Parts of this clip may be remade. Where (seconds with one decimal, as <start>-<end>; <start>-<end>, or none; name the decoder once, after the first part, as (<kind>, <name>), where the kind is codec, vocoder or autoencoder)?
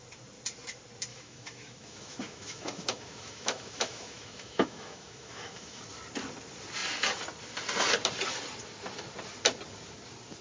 1.1-5.8 (autoencoder, DAC-VAE)